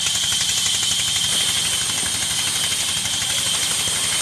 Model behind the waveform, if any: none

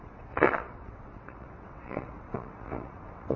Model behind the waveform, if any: vocoder, WaveNeXt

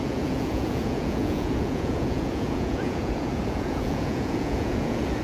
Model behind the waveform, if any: vocoder, Vocos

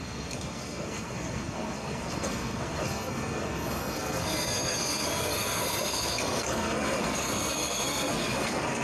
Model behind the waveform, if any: codec, SNAC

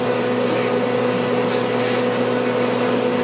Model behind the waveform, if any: none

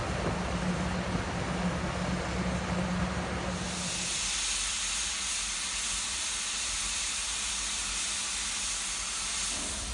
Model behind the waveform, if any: none